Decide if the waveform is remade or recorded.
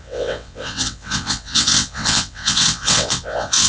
remade